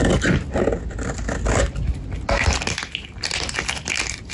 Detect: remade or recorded recorded